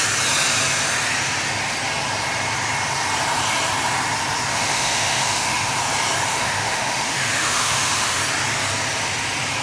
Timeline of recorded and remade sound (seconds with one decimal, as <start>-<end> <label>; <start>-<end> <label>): 0.0-4.5 recorded; 4.5-5.7 remade; 5.7-6.3 recorded; 6.3-8.2 remade; 8.2-9.6 recorded